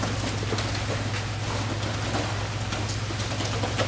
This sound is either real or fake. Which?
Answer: real